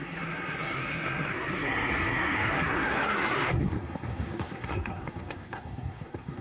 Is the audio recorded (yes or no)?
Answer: no